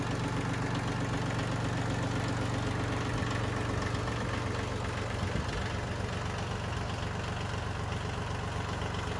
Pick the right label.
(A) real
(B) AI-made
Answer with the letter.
A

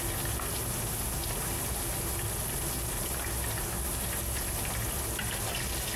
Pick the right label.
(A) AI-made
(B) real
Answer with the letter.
B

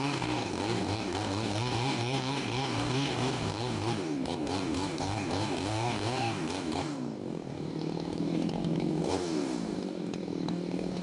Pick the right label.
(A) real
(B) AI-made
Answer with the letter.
B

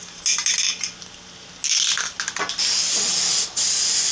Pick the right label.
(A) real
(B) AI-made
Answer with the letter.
A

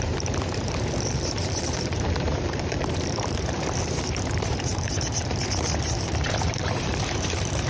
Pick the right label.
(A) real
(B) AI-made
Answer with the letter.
B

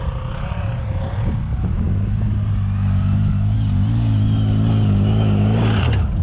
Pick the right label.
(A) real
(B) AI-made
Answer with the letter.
A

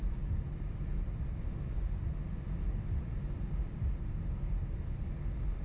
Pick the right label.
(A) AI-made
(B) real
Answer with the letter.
B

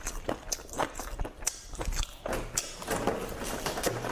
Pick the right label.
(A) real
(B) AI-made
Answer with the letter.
A